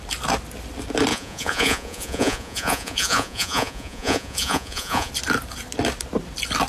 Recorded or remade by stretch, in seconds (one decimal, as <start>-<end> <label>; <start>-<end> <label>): 0.0-1.1 recorded; 1.1-5.1 remade; 5.1-6.7 recorded